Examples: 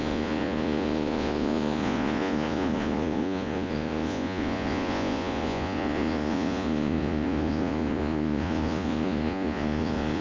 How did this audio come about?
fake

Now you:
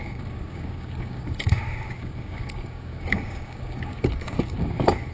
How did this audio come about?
fake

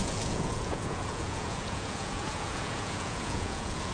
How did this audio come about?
fake